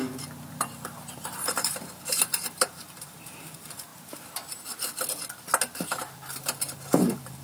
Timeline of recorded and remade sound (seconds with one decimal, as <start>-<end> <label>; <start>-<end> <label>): 0.0-0.5 recorded; 0.5-3.9 remade; 3.9-6.4 recorded; 6.4-7.4 remade